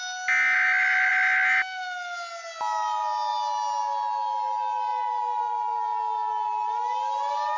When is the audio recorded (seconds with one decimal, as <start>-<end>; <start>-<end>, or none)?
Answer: 0.0-7.6